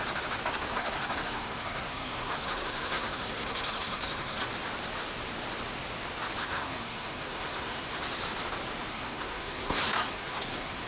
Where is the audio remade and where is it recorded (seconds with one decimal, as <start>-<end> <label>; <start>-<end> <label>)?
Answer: 0.0-0.5 recorded; 0.5-4.4 remade; 4.4-6.4 recorded; 6.4-7.9 remade; 7.9-8.9 recorded; 8.9-10.9 remade